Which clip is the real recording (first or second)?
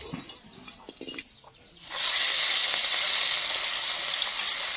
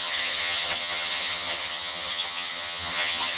first